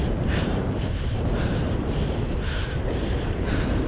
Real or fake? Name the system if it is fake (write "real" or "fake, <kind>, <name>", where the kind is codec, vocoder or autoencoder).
fake, vocoder, BigVGAN v2